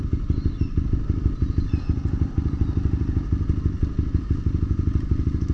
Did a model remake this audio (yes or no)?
no